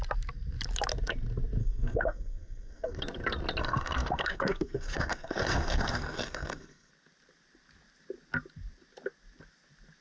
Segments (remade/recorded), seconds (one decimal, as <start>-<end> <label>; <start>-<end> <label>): 0.0-1.6 recorded; 1.6-3.0 remade; 3.0-3.6 recorded; 3.6-6.9 remade; 6.9-10.0 recorded